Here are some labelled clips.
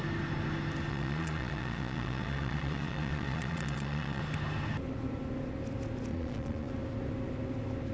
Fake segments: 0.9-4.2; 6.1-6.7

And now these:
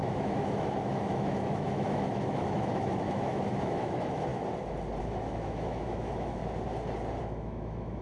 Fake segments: 0.0-4.3; 5.0-6.4; 7.2-8.0

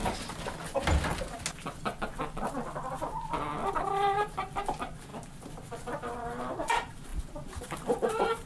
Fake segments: 3.7-5.1; 6.2-8.5

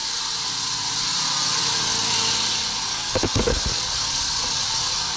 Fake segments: 2.9-4.2

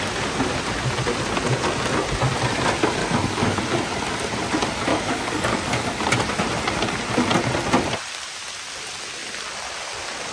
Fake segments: 3.0-3.6; 4.9-6.0